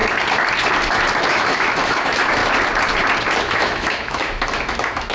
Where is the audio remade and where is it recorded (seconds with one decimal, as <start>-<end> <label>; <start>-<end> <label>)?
0.0-1.3 recorded; 1.3-2.4 remade; 2.4-3.4 recorded; 3.4-5.1 remade